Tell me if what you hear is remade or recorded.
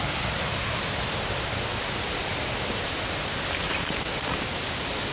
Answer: recorded